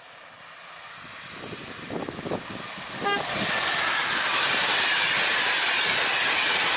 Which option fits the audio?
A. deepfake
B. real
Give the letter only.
B